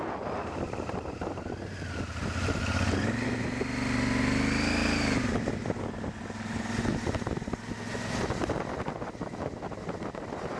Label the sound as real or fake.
real